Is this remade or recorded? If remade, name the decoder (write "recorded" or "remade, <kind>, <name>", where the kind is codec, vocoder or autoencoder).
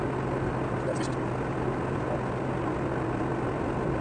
recorded